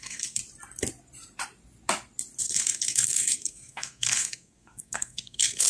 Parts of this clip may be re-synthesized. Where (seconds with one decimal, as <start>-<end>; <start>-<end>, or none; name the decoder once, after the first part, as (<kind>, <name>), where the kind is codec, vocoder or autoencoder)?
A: 0.0-0.4 (codec, SNAC); 2.4-5.7